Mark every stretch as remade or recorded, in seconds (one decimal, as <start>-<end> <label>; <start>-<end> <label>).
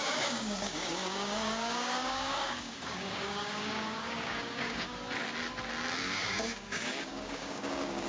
0.0-4.9 remade; 4.9-6.0 recorded; 6.0-8.1 remade